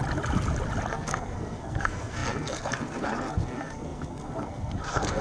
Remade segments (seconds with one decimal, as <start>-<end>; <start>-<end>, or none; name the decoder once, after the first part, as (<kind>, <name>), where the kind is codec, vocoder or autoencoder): 0.9-5.2 (codec, SNAC)